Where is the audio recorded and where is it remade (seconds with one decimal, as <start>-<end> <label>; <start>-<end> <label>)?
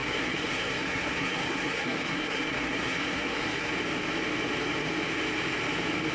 0.0-3.7 remade; 3.7-6.1 recorded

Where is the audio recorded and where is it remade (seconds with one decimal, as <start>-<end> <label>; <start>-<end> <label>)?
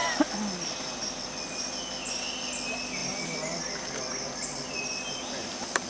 0.0-5.9 recorded